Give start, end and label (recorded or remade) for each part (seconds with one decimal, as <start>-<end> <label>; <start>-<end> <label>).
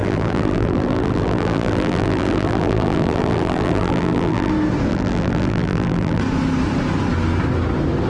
0.0-4.5 remade; 4.5-4.9 recorded; 4.9-6.2 remade; 6.2-8.1 recorded